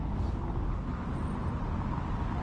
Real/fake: real